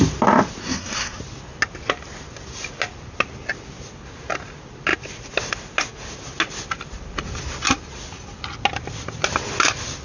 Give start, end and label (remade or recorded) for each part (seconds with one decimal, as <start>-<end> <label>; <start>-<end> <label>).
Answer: 0.0-0.6 recorded; 0.6-1.2 remade; 1.2-10.0 recorded